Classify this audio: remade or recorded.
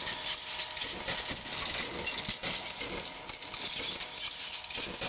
recorded